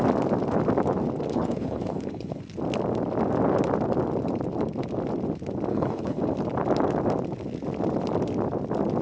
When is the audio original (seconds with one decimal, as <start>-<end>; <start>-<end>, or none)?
0.0-1.3; 2.4-5.7; 6.2-9.0